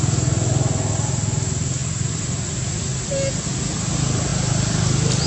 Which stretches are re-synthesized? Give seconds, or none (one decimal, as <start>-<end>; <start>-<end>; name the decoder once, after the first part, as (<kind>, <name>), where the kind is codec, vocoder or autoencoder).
4.3-5.3 (vocoder, BigVGAN v2)